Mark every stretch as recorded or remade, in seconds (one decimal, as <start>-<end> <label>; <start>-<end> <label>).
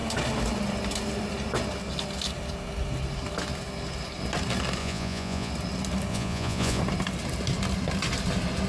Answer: 0.0-4.8 recorded; 4.8-5.5 remade; 5.5-6.1 recorded; 6.1-6.8 remade; 6.8-8.7 recorded